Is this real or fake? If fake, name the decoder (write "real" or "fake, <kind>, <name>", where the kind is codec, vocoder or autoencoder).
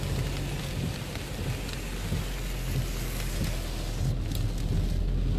real